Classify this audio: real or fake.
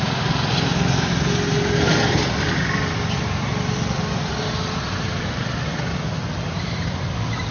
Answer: real